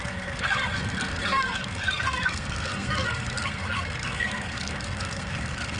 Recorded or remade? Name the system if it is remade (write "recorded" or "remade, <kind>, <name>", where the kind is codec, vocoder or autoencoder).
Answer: remade, codec, SNAC